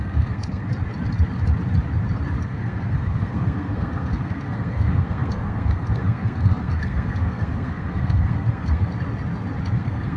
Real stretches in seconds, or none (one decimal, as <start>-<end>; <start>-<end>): 0.7-2.4; 8.9-9.6

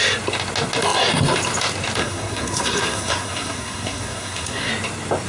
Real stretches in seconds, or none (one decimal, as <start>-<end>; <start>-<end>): 0.0-2.0; 4.7-5.3

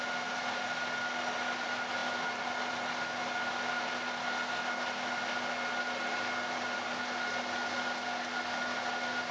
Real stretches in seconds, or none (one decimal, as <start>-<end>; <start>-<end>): 0.0-9.3

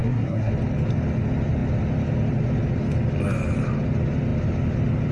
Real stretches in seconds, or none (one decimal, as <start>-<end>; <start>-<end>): 0.5-5.1

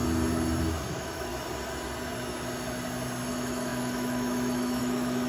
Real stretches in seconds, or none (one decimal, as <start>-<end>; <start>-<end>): 0.0-0.9; 1.3-3.3